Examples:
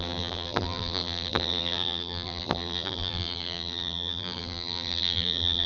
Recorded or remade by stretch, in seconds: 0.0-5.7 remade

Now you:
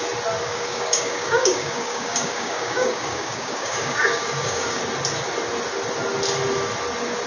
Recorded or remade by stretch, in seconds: 0.0-0.4 recorded; 0.4-4.8 remade; 4.8-7.3 recorded